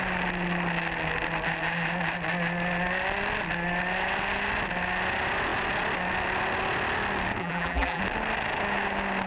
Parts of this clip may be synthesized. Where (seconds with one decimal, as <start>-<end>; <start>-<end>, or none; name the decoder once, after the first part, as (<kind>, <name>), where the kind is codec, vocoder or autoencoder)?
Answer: 7.4-8.0 (vocoder, BigVGAN v2)